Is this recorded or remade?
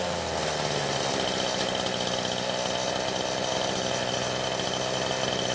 recorded